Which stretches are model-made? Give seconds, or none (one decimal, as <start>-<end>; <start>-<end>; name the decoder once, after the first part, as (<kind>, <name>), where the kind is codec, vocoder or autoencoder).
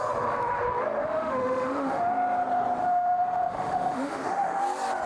1.0-2.1 (autoencoder, DAC-VAE); 2.8-4.6